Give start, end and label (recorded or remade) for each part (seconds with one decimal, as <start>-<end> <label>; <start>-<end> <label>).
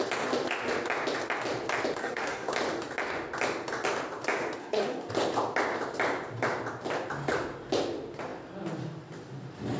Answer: 0.0-2.0 recorded; 2.0-2.5 remade; 2.5-4.6 recorded; 4.6-5.1 remade; 5.1-9.8 recorded